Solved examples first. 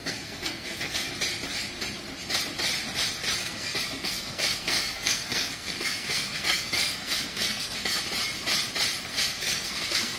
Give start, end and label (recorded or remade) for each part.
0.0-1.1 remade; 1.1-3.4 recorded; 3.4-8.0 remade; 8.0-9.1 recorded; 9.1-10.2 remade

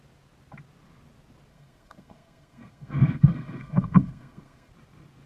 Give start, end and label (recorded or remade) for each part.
0.0-1.5 recorded; 1.5-4.7 remade; 4.7-5.3 recorded

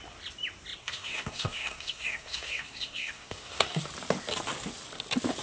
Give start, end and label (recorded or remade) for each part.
0.0-0.8 recorded; 0.8-3.8 remade; 3.8-5.4 recorded

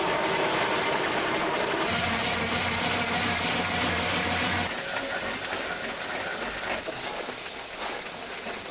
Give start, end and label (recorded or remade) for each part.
0.0-6.3 remade; 6.3-8.7 recorded

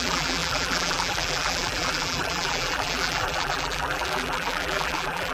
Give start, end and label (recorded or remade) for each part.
0.0-5.3 remade